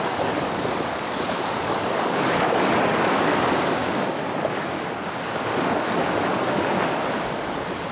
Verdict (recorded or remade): remade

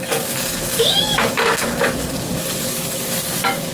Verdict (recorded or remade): remade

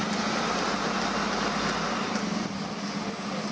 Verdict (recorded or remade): recorded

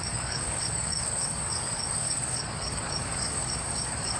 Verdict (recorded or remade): remade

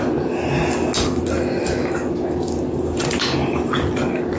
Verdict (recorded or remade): recorded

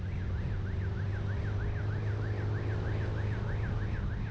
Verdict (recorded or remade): recorded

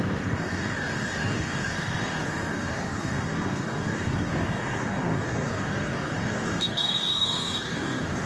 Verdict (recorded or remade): remade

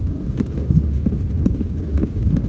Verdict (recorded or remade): remade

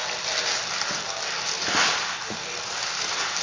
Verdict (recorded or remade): recorded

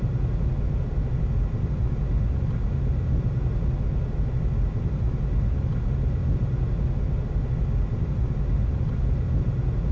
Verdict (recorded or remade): recorded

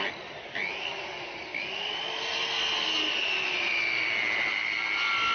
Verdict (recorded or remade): recorded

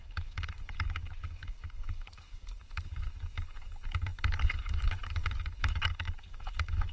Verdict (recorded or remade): remade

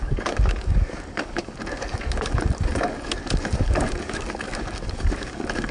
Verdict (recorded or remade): remade